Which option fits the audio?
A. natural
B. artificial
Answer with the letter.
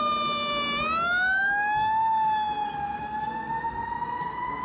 A